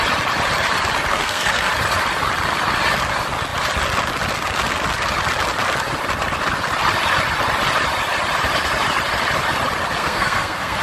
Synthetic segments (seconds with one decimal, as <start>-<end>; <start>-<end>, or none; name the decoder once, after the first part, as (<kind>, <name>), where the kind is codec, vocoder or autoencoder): 1.1-1.7 (codec, SNAC); 10.0-10.8